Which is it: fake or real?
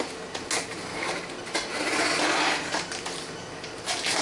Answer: real